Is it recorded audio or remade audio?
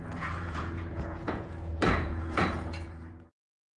remade